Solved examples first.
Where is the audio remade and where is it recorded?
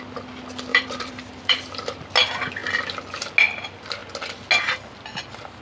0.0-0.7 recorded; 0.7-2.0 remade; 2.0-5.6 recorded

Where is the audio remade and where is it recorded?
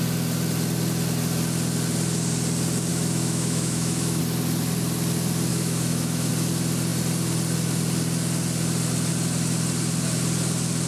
0.0-2.9 recorded; 2.9-4.2 remade; 4.2-5.5 recorded; 5.5-6.3 remade; 6.3-10.9 recorded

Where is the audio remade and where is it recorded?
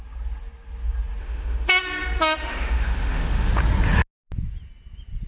0.0-1.2 recorded; 1.2-1.7 remade; 1.7-2.4 recorded; 2.4-3.5 remade; 3.5-5.3 recorded